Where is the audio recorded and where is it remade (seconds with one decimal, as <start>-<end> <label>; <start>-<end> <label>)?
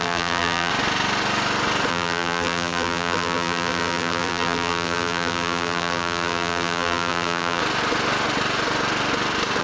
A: 0.0-0.7 remade; 0.7-1.9 recorded; 1.9-7.6 remade; 7.6-9.6 recorded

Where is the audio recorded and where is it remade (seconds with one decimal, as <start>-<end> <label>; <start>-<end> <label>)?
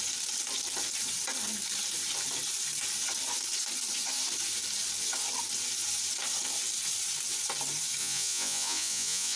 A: 0.0-8.0 recorded; 8.0-9.4 remade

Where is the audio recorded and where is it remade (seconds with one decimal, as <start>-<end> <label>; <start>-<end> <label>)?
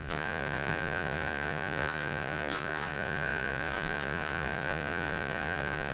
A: 0.0-5.9 remade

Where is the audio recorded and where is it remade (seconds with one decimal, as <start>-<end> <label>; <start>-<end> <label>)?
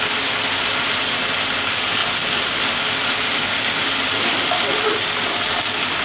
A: 0.0-2.0 recorded; 2.0-5.6 remade; 5.6-6.0 recorded